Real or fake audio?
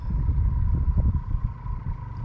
real